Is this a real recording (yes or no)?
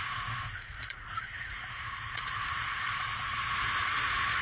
no